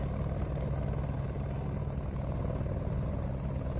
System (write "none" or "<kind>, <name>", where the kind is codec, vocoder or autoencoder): none